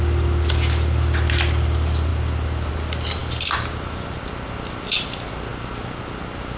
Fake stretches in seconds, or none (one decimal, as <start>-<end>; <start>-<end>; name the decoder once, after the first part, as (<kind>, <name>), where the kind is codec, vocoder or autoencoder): none